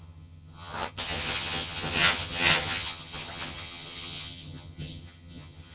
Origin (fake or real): fake